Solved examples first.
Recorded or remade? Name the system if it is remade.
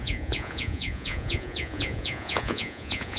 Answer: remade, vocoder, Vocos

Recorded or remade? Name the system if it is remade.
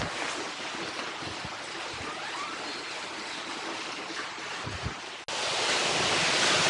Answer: recorded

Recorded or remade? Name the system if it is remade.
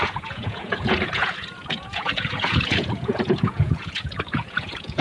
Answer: remade, vocoder, Vocos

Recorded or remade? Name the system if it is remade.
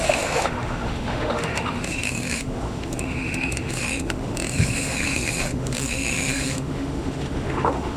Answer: remade, autoencoder, DAC-VAE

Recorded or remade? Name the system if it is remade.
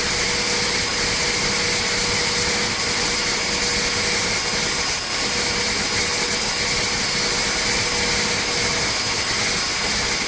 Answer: recorded